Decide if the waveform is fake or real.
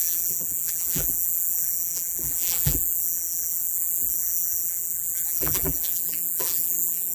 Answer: fake